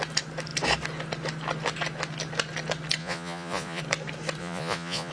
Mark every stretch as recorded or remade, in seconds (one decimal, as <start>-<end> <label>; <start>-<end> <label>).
0.0-3.0 recorded; 3.0-3.8 remade; 3.8-4.4 recorded; 4.4-5.1 remade